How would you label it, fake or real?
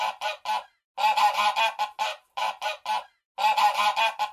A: real